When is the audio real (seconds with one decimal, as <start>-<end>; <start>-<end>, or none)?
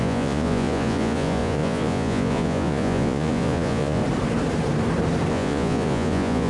4.0-5.3